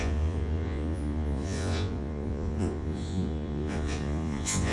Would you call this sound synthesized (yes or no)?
yes